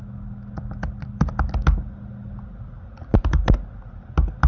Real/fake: real